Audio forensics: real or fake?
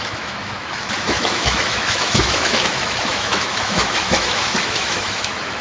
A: fake